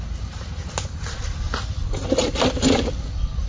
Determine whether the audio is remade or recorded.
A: recorded